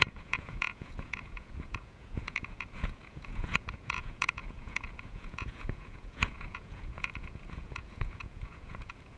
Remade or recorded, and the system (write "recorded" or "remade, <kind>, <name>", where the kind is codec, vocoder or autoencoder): remade, vocoder, Vocos